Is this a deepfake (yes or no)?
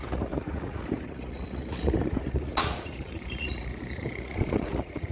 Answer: yes